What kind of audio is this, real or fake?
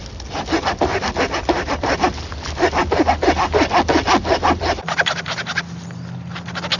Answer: real